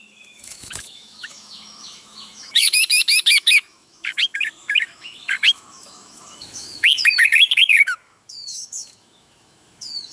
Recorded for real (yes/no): no